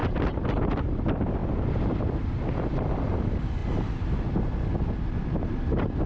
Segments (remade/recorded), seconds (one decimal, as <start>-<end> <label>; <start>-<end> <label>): 0.0-3.6 remade; 3.6-6.1 recorded